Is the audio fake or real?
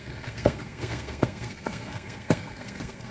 fake